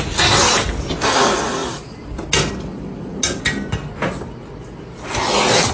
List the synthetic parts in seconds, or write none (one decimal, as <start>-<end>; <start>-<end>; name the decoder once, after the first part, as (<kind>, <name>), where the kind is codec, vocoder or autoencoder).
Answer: none